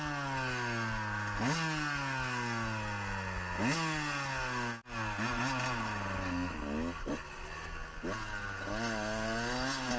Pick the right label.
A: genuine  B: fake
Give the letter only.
A